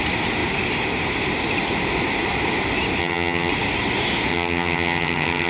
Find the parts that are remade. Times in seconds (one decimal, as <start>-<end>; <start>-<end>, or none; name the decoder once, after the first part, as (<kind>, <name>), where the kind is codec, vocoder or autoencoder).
3.0-3.5 (vocoder, HiFi-GAN); 4.3-5.5